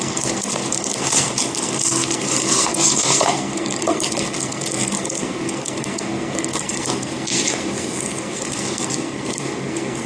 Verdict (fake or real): fake